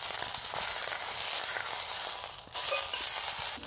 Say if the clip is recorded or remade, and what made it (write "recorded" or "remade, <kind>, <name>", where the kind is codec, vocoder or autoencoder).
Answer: recorded